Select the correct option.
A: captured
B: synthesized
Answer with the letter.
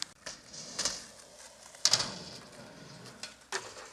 A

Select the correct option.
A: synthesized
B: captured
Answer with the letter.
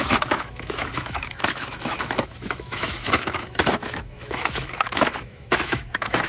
A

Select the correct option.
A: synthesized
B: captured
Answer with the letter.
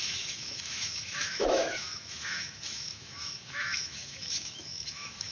A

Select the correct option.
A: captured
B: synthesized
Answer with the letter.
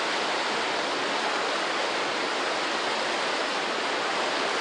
A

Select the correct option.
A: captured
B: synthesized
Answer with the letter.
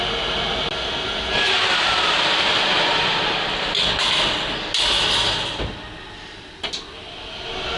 A